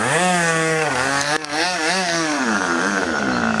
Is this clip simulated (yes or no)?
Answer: yes